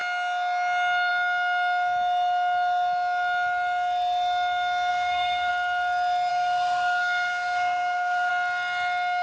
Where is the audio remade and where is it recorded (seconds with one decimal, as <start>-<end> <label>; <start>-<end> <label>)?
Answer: 0.0-4.9 recorded; 4.9-5.5 remade; 5.5-6.3 recorded; 6.3-8.3 remade; 8.3-9.2 recorded